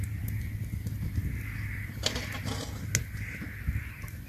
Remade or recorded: recorded